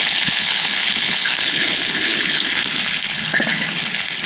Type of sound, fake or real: fake